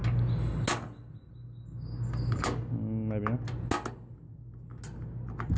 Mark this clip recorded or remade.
recorded